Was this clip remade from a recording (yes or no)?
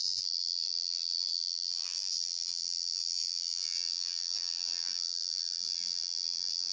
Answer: yes